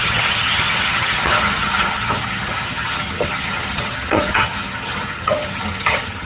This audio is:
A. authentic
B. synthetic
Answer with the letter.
B